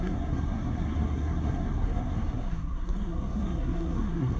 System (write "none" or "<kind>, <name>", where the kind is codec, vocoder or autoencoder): codec, SNAC